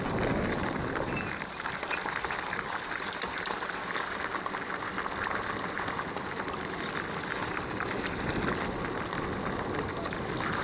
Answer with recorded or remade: recorded